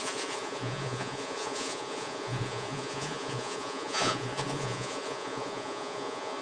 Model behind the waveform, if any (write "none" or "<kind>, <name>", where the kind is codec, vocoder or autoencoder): vocoder, Vocos